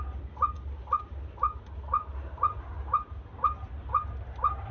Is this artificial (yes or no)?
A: no